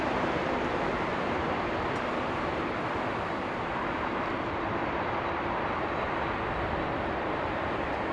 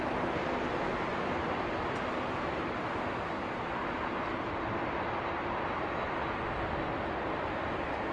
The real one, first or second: second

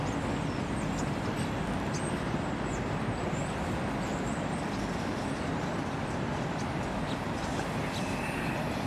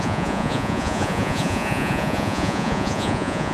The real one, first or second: first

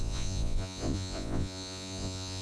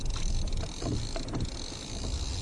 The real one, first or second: second